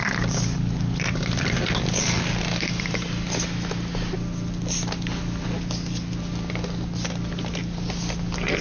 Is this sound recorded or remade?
recorded